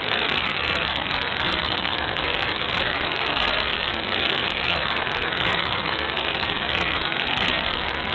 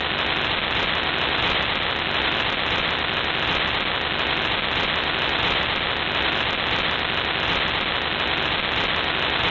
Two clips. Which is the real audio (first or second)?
second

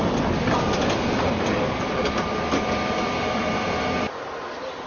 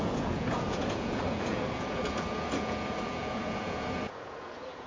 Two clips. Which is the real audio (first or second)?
first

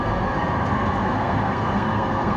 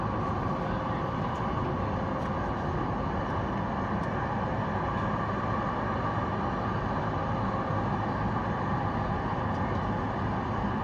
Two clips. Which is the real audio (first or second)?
second